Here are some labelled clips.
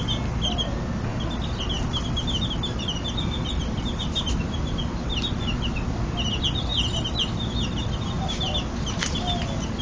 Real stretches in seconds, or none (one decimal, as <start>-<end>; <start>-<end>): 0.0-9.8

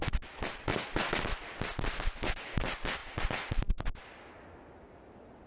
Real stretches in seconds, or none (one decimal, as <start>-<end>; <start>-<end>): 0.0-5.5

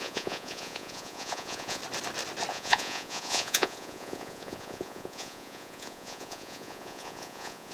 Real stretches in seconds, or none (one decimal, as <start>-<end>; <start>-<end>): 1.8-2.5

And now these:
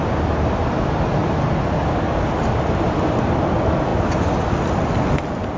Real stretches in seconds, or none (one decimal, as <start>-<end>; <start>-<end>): 0.0-5.6

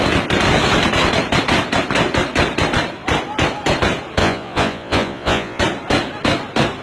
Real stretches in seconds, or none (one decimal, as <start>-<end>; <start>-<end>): 0.0-4.2; 5.6-6.8